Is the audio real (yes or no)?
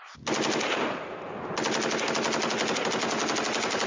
yes